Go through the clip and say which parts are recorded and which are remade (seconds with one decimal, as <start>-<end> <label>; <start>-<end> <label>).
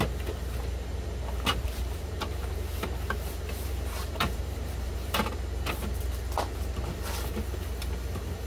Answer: 0.0-1.5 recorded; 1.5-5.3 remade; 5.3-8.5 recorded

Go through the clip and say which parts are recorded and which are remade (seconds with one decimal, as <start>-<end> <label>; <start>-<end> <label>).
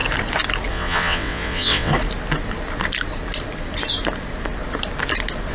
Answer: 0.0-0.7 recorded; 0.7-1.9 remade; 1.9-5.5 recorded